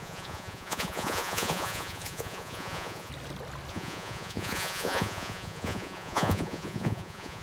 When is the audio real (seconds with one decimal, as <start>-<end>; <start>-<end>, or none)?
3.1-3.7